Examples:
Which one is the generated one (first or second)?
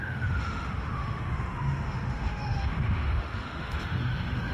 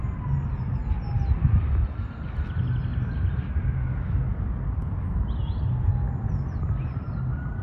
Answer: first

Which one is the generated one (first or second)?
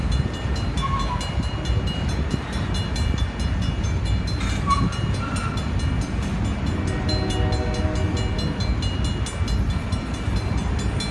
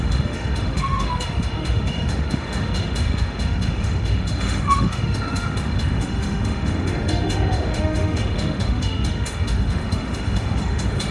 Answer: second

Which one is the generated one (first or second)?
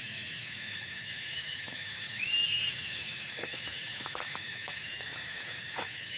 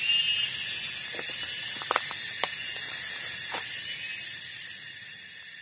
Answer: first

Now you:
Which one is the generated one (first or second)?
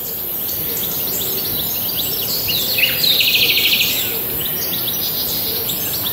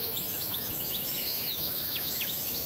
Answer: second